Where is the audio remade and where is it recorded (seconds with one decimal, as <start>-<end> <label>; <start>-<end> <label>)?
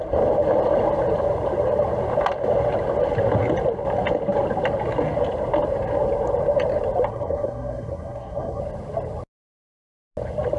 0.0-7.1 recorded; 7.1-8.6 remade; 8.6-10.6 recorded